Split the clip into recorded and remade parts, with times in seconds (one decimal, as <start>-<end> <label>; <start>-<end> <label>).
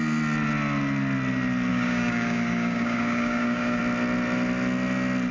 0.0-1.7 recorded; 1.7-3.8 remade; 3.8-5.3 recorded